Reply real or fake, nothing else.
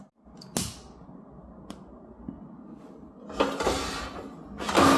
real